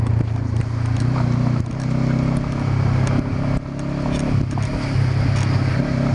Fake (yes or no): no